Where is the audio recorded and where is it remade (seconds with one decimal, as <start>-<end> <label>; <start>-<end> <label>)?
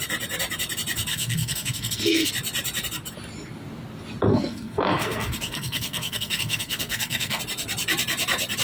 0.0-1.1 recorded; 1.1-2.3 remade; 2.3-4.3 recorded; 4.3-7.4 remade; 7.4-8.6 recorded